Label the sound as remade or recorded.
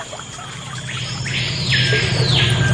recorded